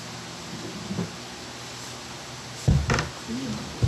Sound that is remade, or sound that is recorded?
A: recorded